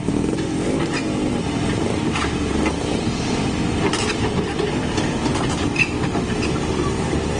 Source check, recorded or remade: recorded